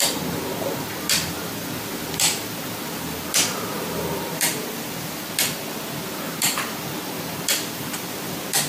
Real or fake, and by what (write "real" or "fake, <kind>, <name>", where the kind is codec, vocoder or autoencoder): fake, vocoder, BigVGAN v2